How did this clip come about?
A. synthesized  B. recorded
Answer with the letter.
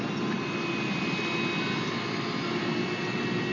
B